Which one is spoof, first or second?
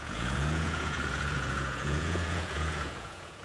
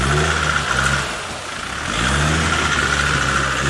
first